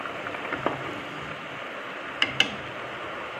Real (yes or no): yes